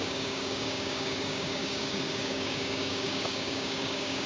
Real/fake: fake